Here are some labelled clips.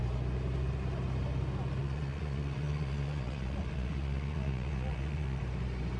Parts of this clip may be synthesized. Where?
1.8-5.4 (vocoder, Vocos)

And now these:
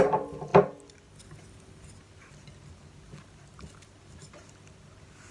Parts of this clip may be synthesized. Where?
none